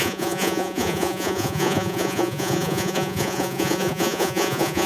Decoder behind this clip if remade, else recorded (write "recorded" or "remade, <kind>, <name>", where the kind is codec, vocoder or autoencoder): remade, vocoder, Vocos